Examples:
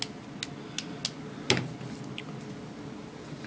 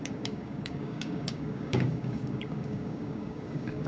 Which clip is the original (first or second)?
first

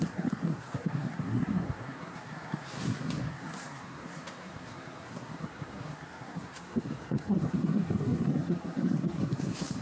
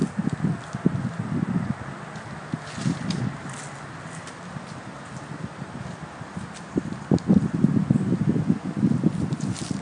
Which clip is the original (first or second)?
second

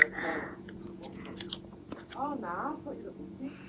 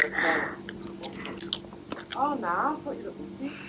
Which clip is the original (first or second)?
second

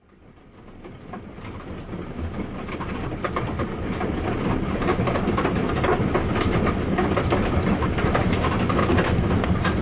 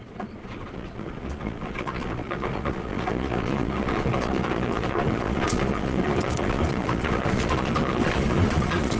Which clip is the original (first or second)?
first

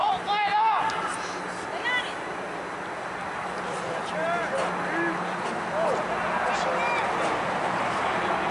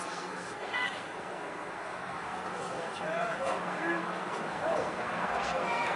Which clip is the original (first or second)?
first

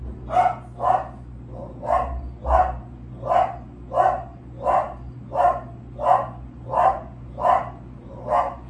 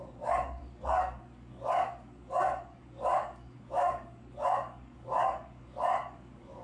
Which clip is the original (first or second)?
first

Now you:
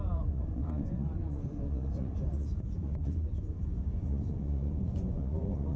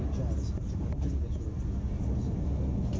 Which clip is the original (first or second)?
second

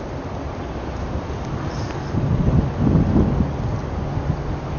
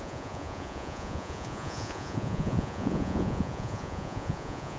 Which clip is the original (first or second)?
first